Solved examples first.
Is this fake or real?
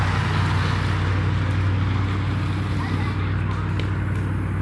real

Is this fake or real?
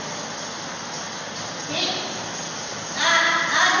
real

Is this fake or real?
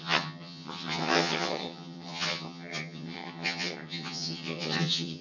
fake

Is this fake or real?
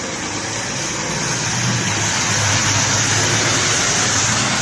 real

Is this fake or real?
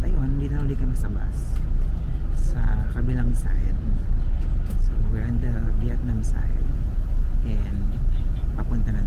real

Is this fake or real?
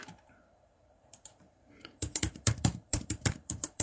fake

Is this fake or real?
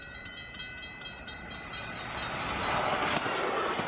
real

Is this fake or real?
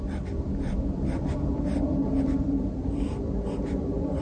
real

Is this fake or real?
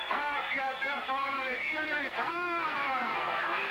fake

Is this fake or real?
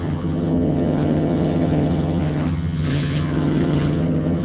fake